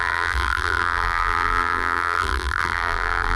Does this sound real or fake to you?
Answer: fake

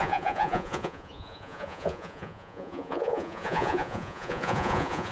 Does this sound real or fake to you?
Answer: fake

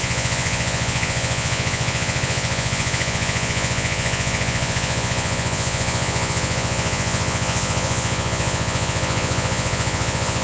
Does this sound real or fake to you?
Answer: fake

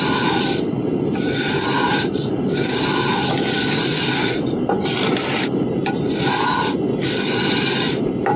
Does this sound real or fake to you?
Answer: real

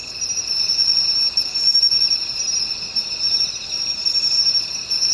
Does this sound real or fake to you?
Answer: real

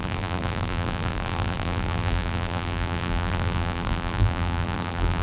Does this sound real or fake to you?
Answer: fake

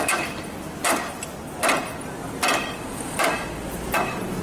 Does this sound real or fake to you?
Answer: real